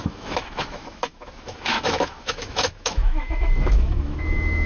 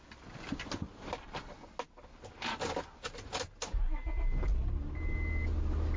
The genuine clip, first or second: second